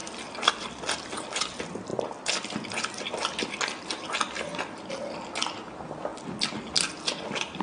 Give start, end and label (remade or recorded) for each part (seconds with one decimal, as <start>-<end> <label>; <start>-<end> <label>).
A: 0.0-7.6 recorded